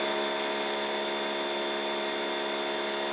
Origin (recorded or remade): recorded